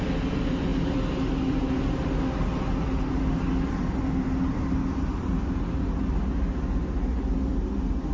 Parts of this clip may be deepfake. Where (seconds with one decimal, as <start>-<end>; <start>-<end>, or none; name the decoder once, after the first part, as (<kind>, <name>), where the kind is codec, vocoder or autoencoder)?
none